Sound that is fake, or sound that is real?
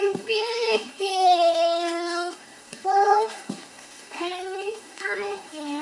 fake